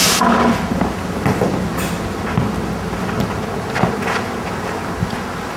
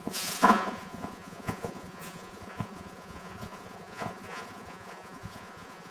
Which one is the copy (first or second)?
second